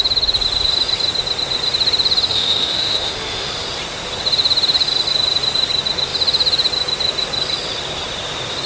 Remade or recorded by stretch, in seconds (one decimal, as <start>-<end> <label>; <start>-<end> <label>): 0.0-2.3 recorded; 2.3-3.5 remade; 3.5-8.7 recorded